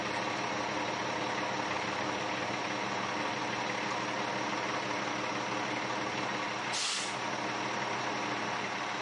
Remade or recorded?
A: recorded